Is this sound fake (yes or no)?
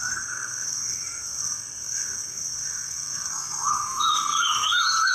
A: yes